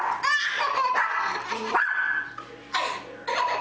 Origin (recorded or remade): recorded